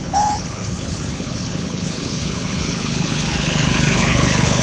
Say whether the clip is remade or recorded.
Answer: remade